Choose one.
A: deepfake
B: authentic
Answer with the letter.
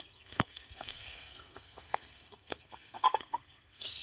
A